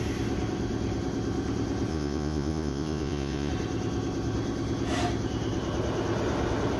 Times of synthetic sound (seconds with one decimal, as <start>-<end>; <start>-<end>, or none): 1.9-3.5